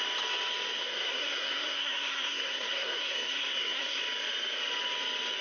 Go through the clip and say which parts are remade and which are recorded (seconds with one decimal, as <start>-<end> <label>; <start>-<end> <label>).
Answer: 0.0-0.8 recorded; 0.8-4.0 remade; 4.0-5.4 recorded